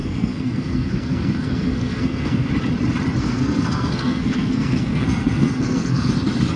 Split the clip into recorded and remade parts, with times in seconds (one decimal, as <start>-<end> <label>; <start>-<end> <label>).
0.0-2.5 remade; 2.5-3.2 recorded; 3.2-6.1 remade; 6.1-6.6 recorded